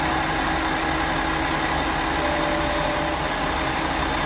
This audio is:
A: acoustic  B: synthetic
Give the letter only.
A